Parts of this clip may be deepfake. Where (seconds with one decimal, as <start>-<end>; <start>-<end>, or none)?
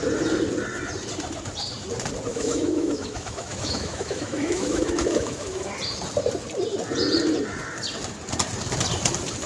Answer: 2.3-5.7